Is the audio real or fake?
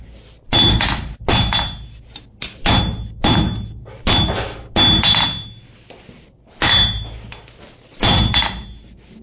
real